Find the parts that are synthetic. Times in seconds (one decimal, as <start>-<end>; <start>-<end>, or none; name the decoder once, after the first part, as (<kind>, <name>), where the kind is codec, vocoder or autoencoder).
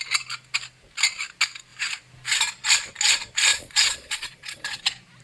3.5-4.8 (vocoder, Vocos)